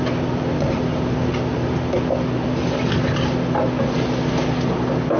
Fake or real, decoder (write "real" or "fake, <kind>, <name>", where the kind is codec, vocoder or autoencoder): real